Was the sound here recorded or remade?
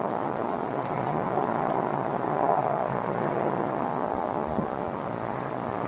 remade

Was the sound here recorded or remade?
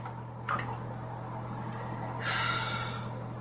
recorded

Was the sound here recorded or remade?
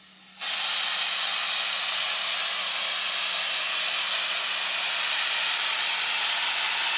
recorded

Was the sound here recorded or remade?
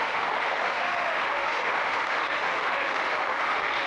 remade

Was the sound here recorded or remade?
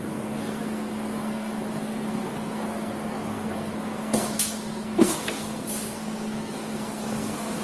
remade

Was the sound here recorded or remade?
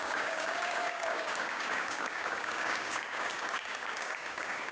remade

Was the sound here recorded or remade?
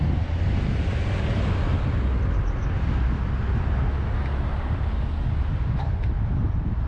recorded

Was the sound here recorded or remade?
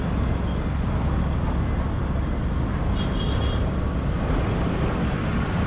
recorded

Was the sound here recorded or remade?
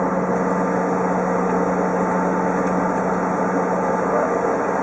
recorded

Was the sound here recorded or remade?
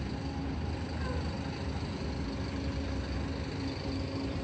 recorded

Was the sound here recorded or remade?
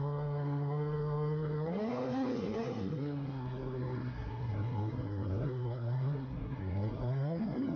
remade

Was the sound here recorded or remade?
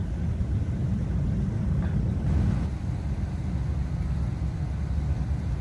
recorded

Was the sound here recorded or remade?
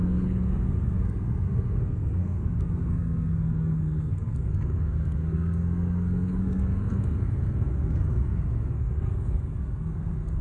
remade